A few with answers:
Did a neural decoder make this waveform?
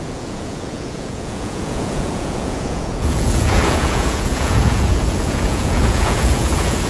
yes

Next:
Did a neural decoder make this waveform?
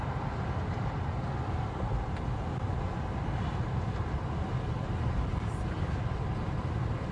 no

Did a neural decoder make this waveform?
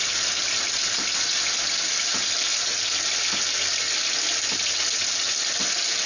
no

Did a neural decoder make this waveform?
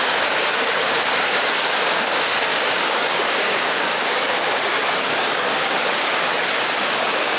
yes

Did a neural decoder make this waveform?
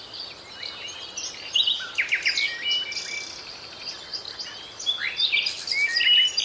no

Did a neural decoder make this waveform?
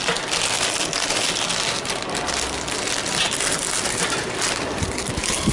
no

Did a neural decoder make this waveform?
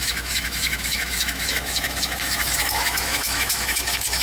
yes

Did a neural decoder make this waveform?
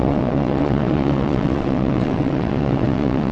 yes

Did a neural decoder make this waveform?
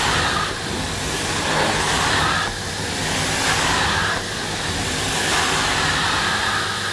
no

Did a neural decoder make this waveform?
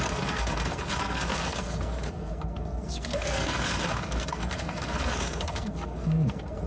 yes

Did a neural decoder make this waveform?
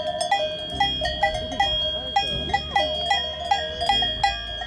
no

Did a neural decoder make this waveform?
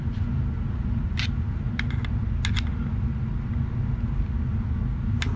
no